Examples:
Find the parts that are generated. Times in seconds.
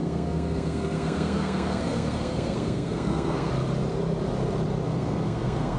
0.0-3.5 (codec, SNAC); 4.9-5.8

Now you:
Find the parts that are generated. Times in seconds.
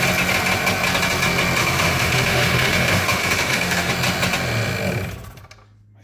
1.6-3.9 (autoencoder, DAC-VAE)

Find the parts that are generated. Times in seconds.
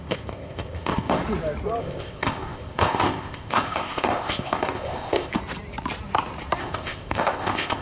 0.0-1.2 (codec, ZipCodec); 1.8-5.4; 6.6-7.8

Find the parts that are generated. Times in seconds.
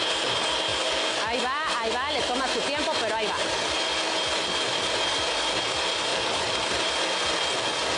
6.1-6.9 (vocoder, BigVGAN v2)